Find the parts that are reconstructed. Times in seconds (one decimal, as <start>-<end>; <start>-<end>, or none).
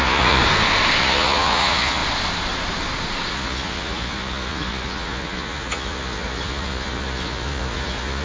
0.0-0.4; 1.0-2.0; 3.3-8.2